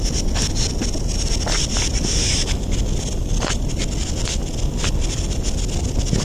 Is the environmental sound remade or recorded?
recorded